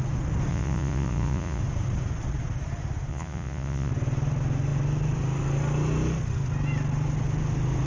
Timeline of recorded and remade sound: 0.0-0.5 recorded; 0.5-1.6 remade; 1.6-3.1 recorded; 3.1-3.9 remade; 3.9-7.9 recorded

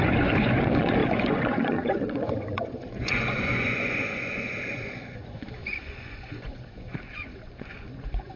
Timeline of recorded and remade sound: 0.0-8.4 remade